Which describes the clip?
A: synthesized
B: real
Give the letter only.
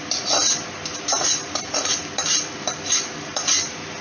B